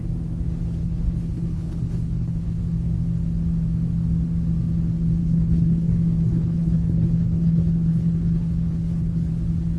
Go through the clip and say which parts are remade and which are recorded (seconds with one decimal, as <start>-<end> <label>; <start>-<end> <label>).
0.0-0.8 recorded; 0.8-2.6 remade; 2.6-5.2 recorded; 5.2-9.3 remade; 9.3-9.8 recorded